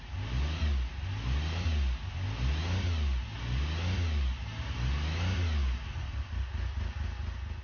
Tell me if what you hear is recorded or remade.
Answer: recorded